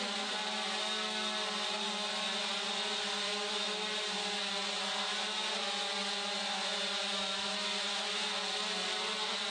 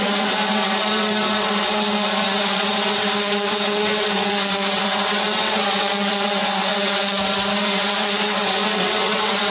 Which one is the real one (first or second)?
first